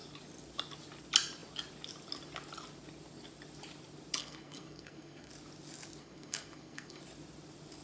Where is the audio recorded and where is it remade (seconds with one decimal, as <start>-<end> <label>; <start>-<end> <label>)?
0.0-4.2 recorded; 4.2-5.3 remade; 5.3-6.0 recorded; 6.0-7.0 remade; 7.0-7.8 recorded